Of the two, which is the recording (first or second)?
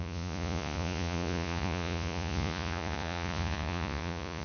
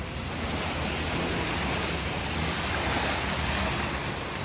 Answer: second